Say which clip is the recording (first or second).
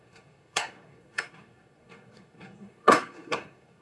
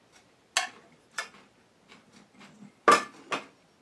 second